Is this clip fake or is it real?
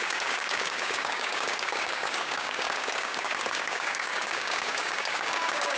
fake